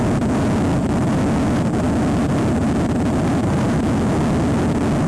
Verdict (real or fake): real